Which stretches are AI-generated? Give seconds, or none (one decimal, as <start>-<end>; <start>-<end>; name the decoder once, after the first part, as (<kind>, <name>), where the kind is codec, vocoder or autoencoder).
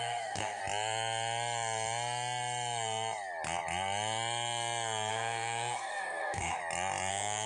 0.0-0.6 (codec, SNAC); 5.1-6.6; 7.1-7.5